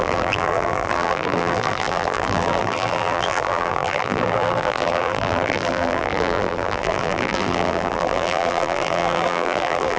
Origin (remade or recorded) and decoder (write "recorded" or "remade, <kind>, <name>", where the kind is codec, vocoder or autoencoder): remade, vocoder, BigVGAN v2